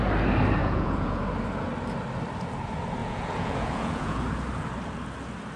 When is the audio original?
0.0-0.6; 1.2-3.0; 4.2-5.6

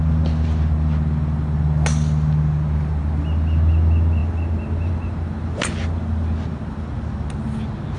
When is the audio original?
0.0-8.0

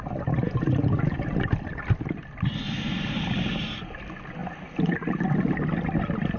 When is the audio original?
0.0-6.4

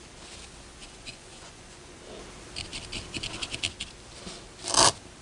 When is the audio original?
0.0-0.8; 2.0-5.2